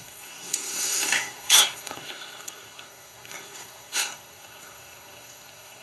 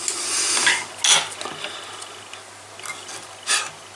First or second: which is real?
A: second